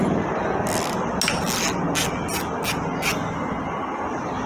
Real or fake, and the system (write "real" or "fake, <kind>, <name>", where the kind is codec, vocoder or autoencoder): real